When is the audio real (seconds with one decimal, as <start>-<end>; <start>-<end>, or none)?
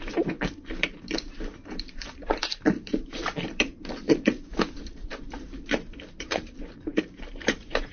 none